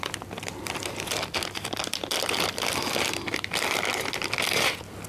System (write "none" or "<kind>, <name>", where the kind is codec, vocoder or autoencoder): none